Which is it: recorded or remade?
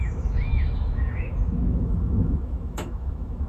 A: remade